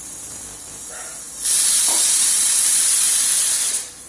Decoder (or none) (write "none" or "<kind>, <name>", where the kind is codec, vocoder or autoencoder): vocoder, BigVGAN v2